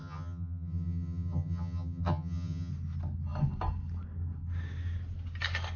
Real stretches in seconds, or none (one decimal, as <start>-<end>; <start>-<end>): 2.7-5.8